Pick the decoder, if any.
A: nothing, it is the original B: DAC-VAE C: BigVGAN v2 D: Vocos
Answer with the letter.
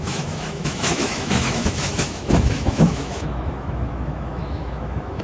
B